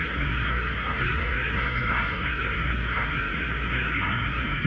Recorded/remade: remade